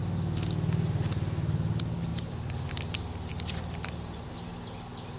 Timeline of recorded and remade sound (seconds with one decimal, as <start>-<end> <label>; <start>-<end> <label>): 0.0-2.1 recorded; 2.1-2.7 remade; 2.7-3.3 recorded; 3.3-4.3 remade; 4.3-5.2 recorded